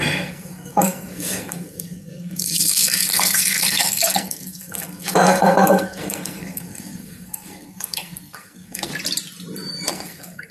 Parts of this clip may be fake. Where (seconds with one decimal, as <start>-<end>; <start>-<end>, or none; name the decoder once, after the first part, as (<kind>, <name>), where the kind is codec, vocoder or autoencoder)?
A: 0.0-8.9 (codec, SNAC); 9.9-10.5